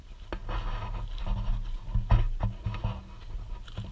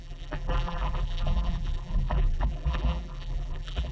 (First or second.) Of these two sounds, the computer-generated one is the second